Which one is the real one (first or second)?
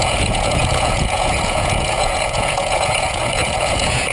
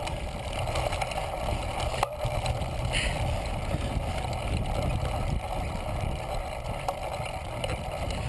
second